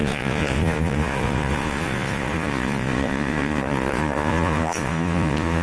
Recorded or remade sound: remade